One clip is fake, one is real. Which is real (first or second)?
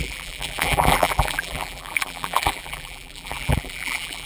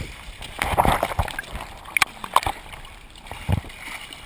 second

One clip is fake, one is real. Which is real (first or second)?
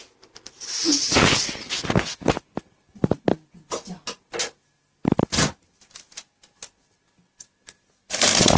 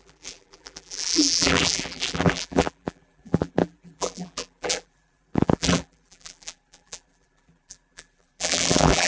first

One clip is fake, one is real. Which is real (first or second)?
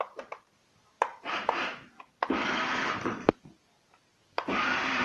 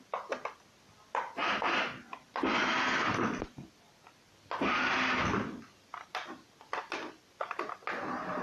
second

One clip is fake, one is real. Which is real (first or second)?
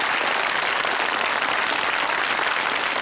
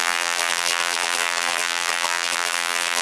first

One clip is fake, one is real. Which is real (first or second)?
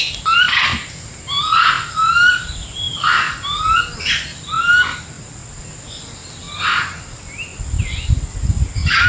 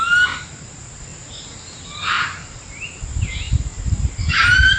first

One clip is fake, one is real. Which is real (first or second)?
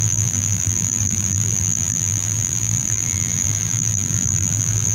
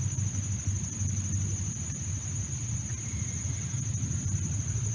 second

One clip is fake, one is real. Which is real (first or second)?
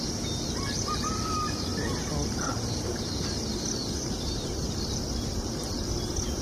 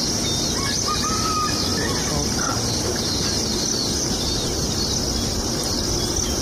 second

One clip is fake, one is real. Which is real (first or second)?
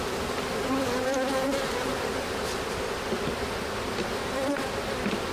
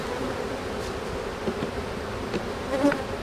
first